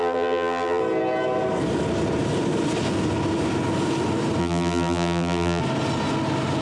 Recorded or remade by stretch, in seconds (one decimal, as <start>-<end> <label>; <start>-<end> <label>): 0.0-0.8 remade; 0.8-4.4 recorded; 4.4-5.6 remade; 5.6-6.6 recorded